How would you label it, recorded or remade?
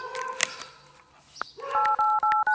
recorded